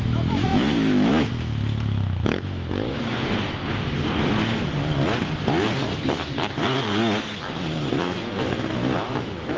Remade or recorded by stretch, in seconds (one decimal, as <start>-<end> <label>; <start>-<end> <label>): 0.0-3.6 remade; 3.6-7.9 recorded; 7.9-9.6 remade